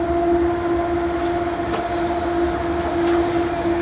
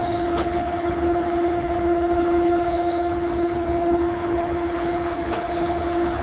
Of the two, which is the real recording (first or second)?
first